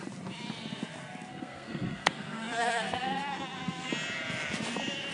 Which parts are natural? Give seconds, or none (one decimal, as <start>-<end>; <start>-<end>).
0.0-1.3; 3.9-5.1